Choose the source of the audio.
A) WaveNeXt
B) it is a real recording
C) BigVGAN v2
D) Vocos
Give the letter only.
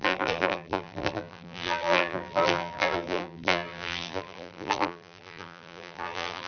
C